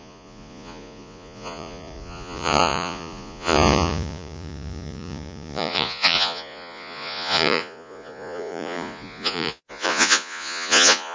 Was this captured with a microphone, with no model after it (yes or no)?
no